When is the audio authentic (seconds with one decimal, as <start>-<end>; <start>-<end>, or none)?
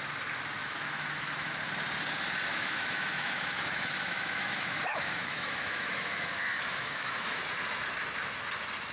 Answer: 0.0-0.6; 1.5-2.5; 6.3-6.7; 7.4-8.9